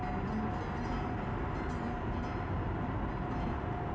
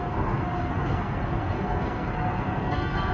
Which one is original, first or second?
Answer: first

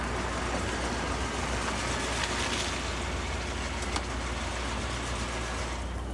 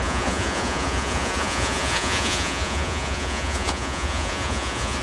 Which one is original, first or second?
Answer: first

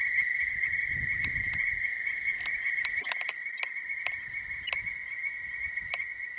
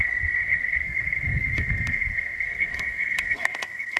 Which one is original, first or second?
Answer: first